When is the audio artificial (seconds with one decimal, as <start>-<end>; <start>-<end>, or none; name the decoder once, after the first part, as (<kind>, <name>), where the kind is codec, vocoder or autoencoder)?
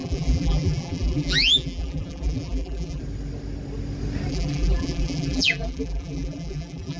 0.0-3.0 (vocoder, BigVGAN v2); 4.3-7.0